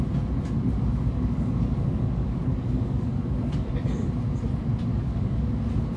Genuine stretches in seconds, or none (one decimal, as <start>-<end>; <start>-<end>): 0.0-0.7; 3.7-4.9; 5.5-6.0